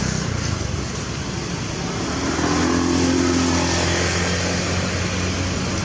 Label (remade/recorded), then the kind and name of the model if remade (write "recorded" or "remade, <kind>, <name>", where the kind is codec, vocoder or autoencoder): recorded